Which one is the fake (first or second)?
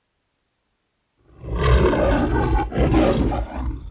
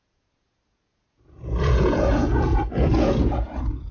second